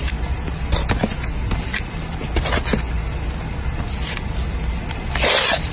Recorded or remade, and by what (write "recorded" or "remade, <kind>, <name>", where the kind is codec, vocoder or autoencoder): recorded